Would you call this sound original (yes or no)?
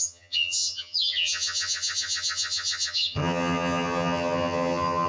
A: no